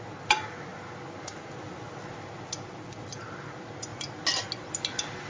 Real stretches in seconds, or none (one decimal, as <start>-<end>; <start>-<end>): 0.0-5.3